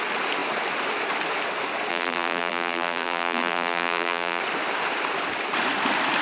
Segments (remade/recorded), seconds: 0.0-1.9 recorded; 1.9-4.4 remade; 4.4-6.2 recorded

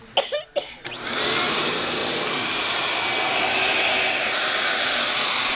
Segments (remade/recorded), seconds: 0.0-5.5 recorded

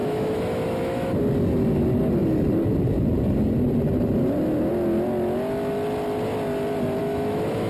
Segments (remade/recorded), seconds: 0.0-1.2 remade; 1.2-7.0 recorded; 7.0-7.7 remade

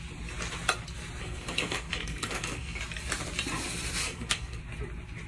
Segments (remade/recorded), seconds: 0.0-1.2 recorded; 1.2-2.8 remade; 2.8-4.0 recorded; 4.0-4.6 remade; 4.6-5.3 recorded

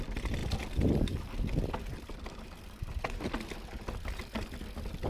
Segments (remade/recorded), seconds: 0.0-5.1 recorded

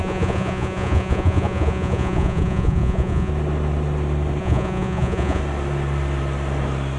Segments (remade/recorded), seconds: 0.0-3.3 remade; 3.3-4.4 recorded; 4.4-5.4 remade; 5.4-7.0 recorded